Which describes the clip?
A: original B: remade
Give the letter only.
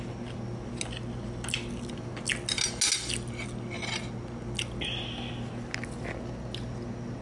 A